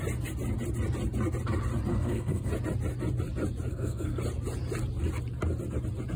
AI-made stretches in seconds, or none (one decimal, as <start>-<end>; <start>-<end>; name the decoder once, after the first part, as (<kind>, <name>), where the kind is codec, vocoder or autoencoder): 1.9-2.5 (codec, SNAC); 3.7-4.2